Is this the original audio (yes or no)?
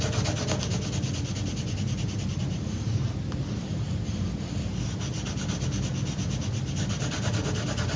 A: yes